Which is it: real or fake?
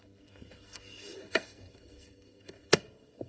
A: fake